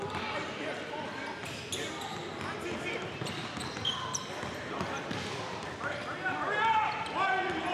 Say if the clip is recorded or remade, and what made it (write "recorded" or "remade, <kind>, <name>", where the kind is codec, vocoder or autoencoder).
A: recorded